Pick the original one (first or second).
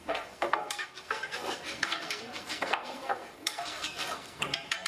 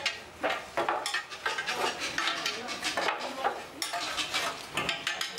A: second